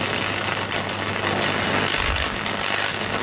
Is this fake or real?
real